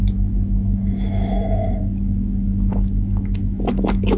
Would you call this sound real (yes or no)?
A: no